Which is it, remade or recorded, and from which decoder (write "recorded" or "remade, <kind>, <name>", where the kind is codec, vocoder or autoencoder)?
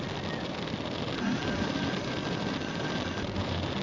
recorded